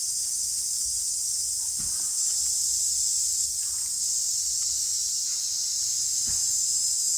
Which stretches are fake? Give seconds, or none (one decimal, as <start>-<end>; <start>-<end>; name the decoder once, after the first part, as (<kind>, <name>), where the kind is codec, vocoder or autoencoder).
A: none